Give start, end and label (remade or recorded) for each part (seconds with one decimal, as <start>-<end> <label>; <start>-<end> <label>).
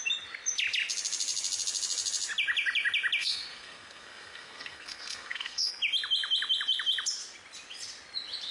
0.0-3.2 recorded; 3.2-5.7 remade; 5.7-8.5 recorded